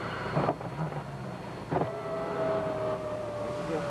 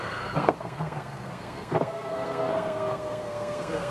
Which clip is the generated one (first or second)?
second